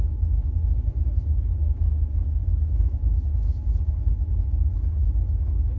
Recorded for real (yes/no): yes